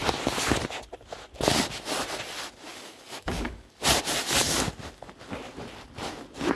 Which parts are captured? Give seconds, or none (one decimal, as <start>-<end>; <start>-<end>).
0.0-2.7; 3.8-6.6